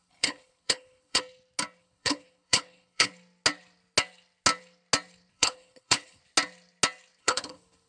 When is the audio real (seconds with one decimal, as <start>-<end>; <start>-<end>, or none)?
1.2-1.8; 3.1-5.3; 6.2-7.2